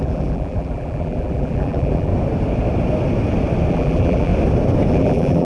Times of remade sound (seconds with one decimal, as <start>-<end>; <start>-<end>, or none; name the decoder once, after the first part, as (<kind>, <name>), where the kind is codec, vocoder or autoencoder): 0.0-2.1 (vocoder, BigVGAN v2); 3.7-4.3; 4.9-5.4

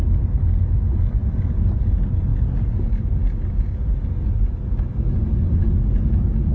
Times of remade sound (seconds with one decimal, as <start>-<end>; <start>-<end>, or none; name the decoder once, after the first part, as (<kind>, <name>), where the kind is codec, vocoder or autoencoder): none

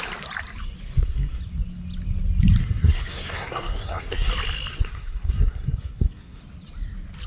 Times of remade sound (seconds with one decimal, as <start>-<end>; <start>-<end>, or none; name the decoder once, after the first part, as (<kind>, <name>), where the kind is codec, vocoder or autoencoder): 0.9-1.4 (codec, SNAC); 2.6-4.3; 4.7-6.4

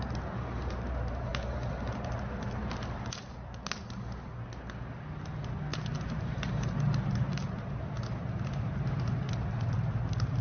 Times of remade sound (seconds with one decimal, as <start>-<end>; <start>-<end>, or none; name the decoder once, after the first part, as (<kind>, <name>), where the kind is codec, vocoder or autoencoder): none

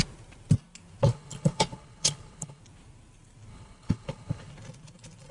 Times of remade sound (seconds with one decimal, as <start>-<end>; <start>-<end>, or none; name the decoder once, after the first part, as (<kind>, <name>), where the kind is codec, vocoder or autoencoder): 1.1-2.6 (codec, HILCodec); 3.5-4.5

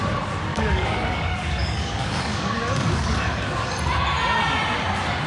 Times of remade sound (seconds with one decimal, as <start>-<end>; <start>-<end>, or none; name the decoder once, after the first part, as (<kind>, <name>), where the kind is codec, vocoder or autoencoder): 0.5-3.7 (codec, DAC)

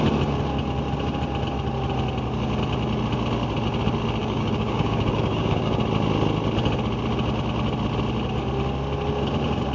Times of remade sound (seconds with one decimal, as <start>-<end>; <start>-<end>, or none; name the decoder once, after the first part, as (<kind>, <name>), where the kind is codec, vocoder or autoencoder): 4.2-5.8 (codec, DAC)